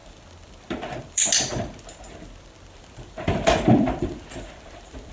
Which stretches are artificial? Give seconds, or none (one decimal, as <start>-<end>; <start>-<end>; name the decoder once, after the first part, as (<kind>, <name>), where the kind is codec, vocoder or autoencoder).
1.0-1.5 (vocoder, BigVGAN v2); 2.8-5.1